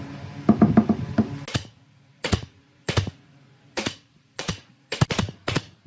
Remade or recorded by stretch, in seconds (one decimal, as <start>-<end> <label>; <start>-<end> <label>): 0.0-1.5 recorded; 1.5-5.0 remade; 5.0-5.9 recorded